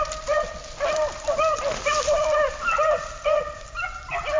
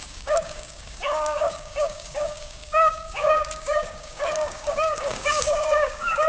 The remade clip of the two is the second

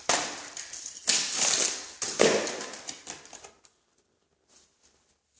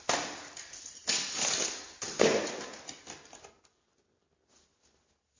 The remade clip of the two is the first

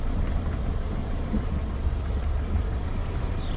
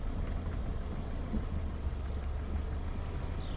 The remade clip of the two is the first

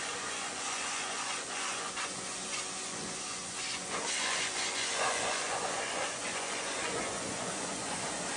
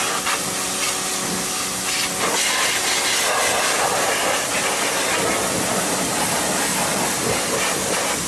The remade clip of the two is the first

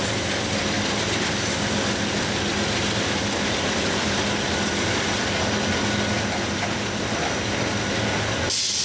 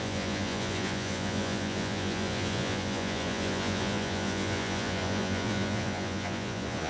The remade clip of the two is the second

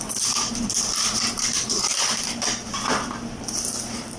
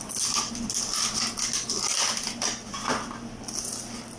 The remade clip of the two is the first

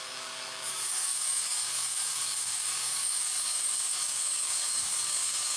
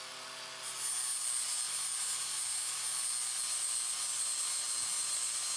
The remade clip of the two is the first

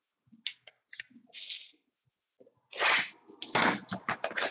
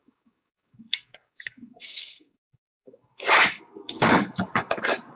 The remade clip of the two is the second